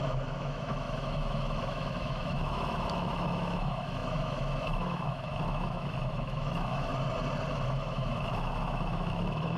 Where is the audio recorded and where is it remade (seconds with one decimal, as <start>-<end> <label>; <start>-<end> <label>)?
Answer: 0.0-6.9 remade; 6.9-7.5 recorded; 7.5-9.6 remade